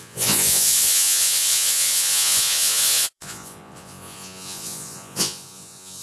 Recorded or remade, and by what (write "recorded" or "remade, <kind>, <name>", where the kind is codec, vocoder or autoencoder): remade, vocoder, Vocos